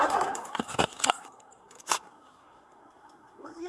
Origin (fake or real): fake